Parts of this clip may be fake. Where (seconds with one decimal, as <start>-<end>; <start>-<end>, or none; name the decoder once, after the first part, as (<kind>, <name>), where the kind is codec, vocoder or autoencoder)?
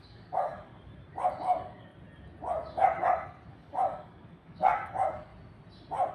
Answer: 0.0-0.7 (codec, DAC); 1.3-1.9; 3.5-5.3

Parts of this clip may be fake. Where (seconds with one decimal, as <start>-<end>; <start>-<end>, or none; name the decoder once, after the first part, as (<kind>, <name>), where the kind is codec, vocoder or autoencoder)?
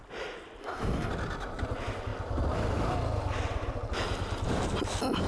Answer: 0.6-1.1 (codec, DAC)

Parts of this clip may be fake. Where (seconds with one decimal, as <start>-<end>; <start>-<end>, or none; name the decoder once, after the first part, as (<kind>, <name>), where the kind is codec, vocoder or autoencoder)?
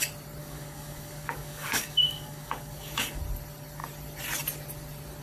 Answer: 0.4-3.2 (codec, DAC)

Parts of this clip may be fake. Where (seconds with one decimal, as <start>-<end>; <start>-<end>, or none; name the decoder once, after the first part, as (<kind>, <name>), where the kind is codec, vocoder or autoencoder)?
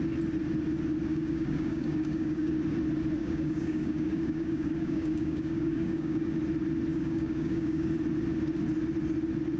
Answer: 1.1-2.5 (codec, DAC); 3.2-6.3; 6.9-7.9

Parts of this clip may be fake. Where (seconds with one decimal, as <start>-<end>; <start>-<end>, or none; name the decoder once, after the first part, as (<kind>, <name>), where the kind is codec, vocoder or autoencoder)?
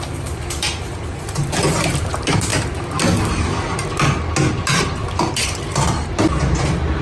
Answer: none